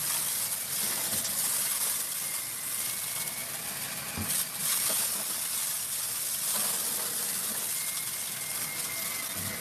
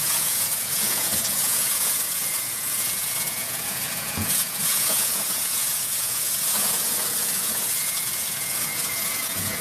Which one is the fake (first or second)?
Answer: second